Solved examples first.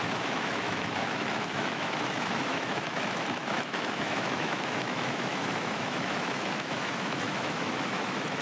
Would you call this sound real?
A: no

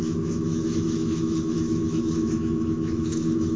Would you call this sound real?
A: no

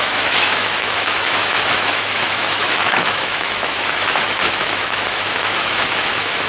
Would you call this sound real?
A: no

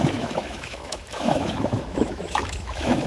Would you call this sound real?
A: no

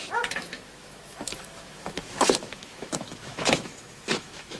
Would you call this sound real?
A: no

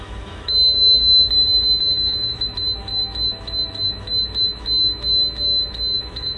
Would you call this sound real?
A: no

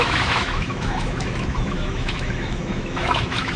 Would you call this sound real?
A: no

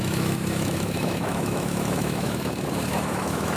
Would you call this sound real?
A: no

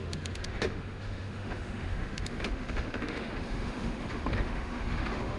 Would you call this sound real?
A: no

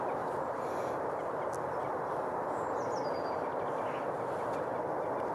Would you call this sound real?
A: yes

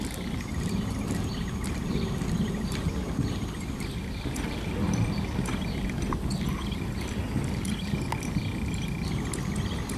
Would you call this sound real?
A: yes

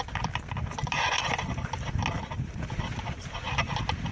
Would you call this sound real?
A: yes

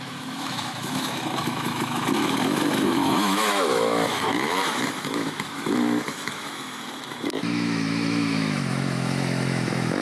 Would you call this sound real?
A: no